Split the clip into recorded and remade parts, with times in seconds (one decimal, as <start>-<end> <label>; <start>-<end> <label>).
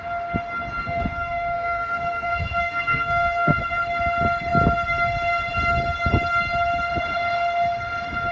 0.0-0.8 recorded; 0.8-3.7 remade; 3.7-8.3 recorded